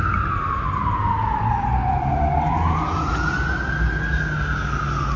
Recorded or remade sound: recorded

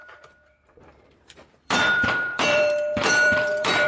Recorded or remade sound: remade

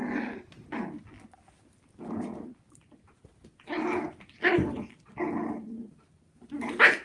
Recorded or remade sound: recorded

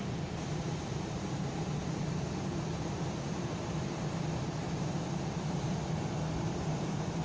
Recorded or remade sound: remade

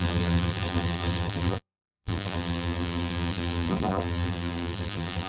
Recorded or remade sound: remade